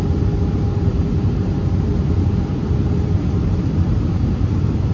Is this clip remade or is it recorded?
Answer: remade